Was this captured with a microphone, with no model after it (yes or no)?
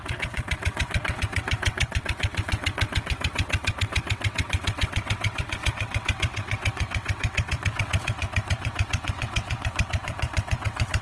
no